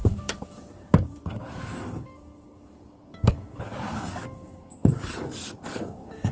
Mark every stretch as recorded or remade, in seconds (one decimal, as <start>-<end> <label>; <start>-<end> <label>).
0.0-6.3 remade